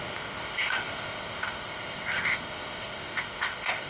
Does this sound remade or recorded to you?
remade